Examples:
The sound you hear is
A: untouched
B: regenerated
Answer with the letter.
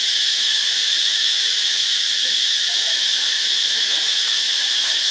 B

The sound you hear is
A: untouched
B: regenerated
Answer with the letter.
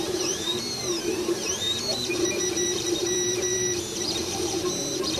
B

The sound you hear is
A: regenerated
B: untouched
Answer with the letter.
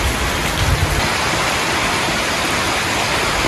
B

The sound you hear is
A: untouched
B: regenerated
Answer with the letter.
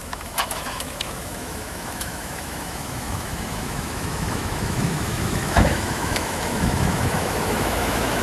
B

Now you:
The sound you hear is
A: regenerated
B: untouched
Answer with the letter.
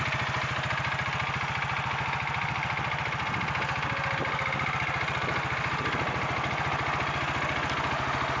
B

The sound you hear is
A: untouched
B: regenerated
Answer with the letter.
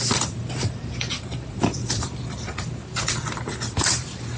B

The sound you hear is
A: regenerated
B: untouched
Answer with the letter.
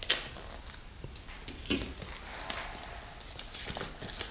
B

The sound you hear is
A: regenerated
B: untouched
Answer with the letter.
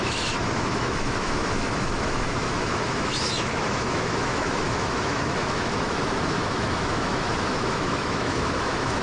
A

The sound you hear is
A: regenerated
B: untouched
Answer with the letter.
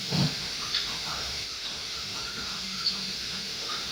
A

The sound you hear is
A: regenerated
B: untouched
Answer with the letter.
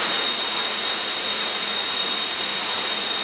A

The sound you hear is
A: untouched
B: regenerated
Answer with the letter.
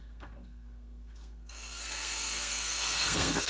B